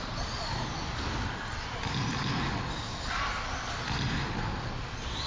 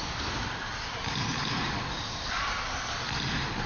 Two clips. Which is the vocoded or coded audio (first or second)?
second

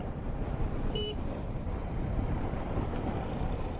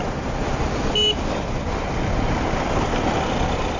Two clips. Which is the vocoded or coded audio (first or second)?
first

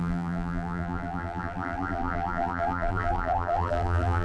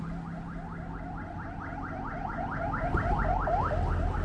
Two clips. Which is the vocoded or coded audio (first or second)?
first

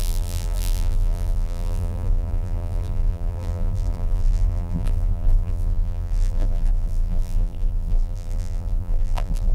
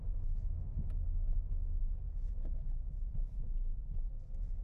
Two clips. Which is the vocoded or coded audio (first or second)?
first